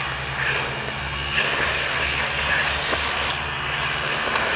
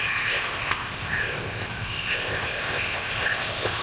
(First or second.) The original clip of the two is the first